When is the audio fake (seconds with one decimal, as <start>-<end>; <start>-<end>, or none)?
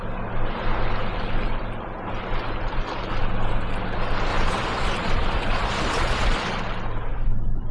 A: 4.3-6.6